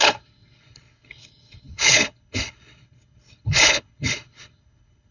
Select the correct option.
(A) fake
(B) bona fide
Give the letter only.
A